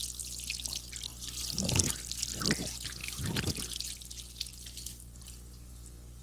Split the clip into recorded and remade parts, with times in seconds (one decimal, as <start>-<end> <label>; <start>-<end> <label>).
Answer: 0.0-1.1 recorded; 1.1-2.0 remade; 2.0-3.0 recorded; 3.0-3.6 remade; 3.6-4.5 recorded; 4.5-5.2 remade; 5.2-6.2 recorded